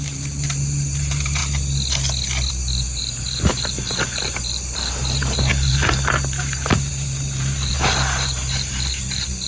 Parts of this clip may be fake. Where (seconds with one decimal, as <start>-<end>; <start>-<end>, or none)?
0.0-1.4; 2.5-9.5